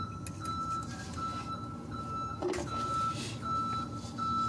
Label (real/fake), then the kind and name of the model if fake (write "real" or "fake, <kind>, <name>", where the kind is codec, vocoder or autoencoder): real